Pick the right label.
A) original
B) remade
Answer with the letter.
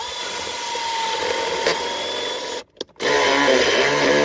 A